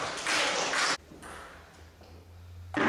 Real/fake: real